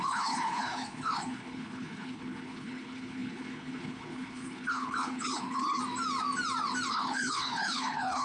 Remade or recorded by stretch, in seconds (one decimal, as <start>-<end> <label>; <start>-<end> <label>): 0.0-5.8 remade; 5.8-6.9 recorded; 6.9-8.2 remade

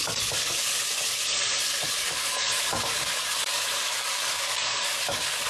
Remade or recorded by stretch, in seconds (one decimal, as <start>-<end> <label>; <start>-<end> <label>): 0.0-1.2 remade; 1.2-1.9 recorded; 1.9-5.5 remade

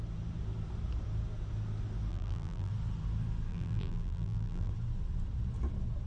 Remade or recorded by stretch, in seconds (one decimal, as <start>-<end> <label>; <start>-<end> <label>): 0.0-2.1 recorded; 2.1-2.7 remade; 2.7-3.5 recorded; 3.5-4.7 remade; 4.7-6.1 recorded

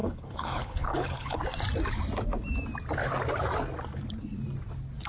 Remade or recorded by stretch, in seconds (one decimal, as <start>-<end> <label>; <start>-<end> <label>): 0.0-1.4 remade; 1.4-5.1 recorded

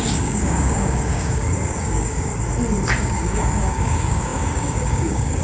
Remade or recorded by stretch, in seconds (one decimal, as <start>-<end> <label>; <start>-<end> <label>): 0.0-2.3 remade; 2.3-3.0 recorded; 3.0-5.4 remade

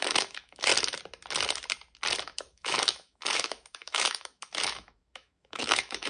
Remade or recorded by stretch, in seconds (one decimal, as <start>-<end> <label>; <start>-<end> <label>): 0.0-0.7 remade; 0.7-2.2 recorded; 2.2-6.1 remade

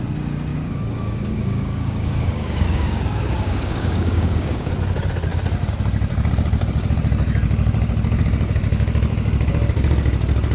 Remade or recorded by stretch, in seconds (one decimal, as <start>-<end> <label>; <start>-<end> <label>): 0.0-0.5 recorded; 0.5-4.7 remade; 4.7-10.5 recorded